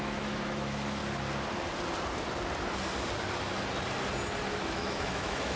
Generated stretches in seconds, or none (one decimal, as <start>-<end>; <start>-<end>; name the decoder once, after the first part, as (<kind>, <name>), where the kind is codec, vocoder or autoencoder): 0.0-1.0 (autoencoder, DAC-VAE); 4.4-5.6